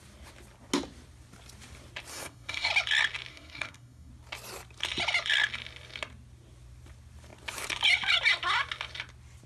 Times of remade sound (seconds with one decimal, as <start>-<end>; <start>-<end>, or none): 2.1-2.7; 3.3-4.1